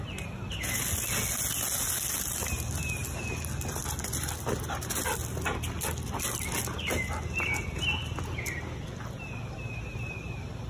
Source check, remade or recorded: recorded